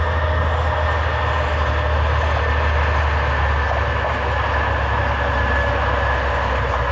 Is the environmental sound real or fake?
real